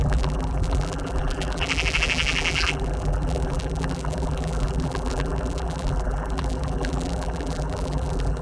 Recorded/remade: remade